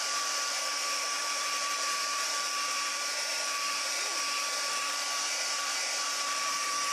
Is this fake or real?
fake